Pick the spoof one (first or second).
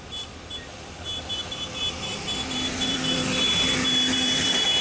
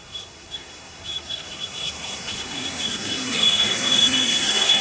second